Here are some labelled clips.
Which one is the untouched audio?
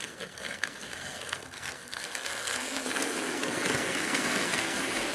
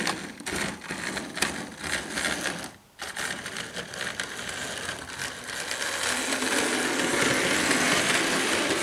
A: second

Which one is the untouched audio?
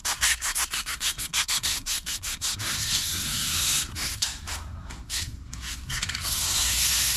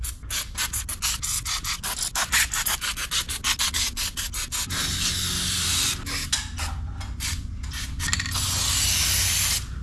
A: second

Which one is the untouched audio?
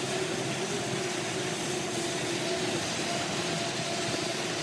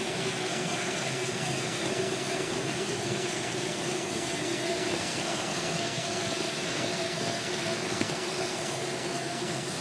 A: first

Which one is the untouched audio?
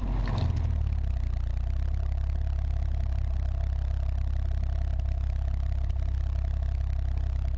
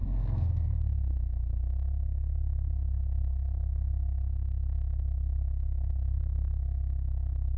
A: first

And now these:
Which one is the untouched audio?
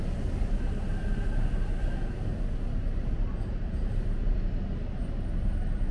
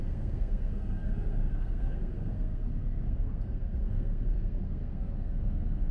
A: first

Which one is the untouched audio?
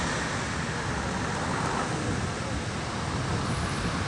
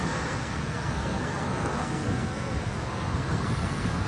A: first